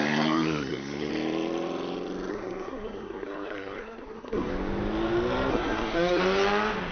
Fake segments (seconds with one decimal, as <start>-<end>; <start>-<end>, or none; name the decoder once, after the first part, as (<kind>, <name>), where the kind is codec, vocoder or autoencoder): 0.0-1.1 (codec, SNAC); 2.3-4.5; 5.5-6.2